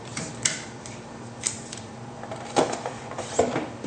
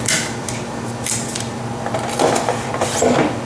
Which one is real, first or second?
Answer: second